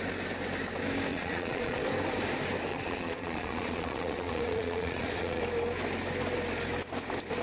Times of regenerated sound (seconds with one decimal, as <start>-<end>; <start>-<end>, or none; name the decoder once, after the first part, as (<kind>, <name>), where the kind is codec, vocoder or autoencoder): 1.1-1.8 (vocoder, Vocos); 2.7-5.4